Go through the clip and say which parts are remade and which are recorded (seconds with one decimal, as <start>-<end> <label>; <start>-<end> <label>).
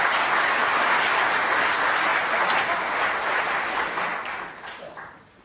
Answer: 0.0-5.4 recorded